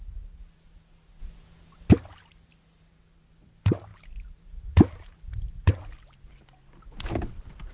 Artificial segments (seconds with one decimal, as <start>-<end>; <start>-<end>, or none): 3.9-5.7